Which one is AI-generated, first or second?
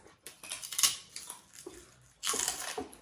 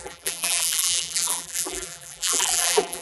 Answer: second